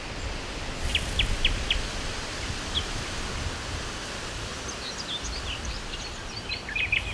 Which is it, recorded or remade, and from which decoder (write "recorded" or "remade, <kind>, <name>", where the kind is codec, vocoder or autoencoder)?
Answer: recorded